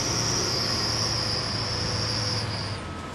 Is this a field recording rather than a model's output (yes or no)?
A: yes